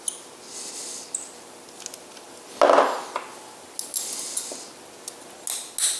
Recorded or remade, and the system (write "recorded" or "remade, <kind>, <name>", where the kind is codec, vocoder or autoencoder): recorded